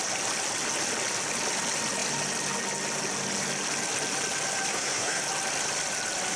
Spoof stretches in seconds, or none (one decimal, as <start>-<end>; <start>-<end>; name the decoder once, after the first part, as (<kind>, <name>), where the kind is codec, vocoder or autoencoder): 4.7-5.2 (codec, SNAC)